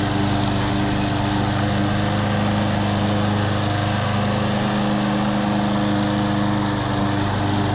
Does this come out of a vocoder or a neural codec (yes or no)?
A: no